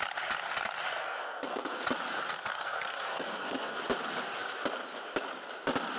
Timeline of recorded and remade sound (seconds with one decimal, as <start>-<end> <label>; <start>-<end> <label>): 0.0-1.0 recorded; 1.0-1.8 remade; 1.8-2.3 recorded; 2.3-3.8 remade; 3.8-6.0 recorded